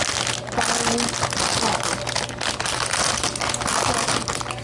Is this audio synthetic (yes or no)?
no